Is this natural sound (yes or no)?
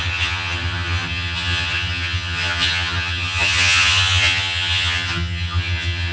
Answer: no